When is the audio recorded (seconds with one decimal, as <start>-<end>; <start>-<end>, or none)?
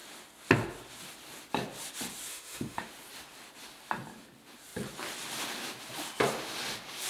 0.0-2.3; 2.9-7.1